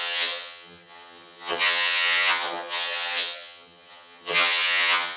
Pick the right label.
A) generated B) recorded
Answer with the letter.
A